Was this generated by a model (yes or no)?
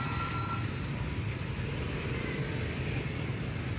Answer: no